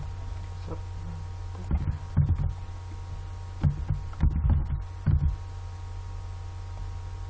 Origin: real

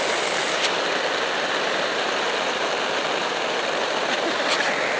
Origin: fake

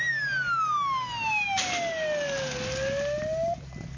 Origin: real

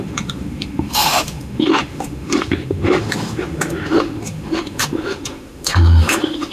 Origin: fake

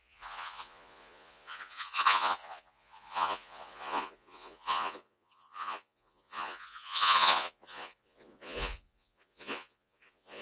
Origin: fake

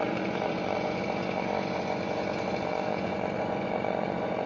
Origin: fake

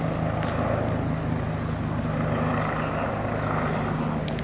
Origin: real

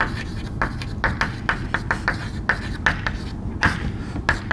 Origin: real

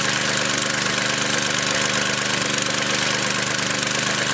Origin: real